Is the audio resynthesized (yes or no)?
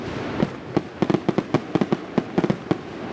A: no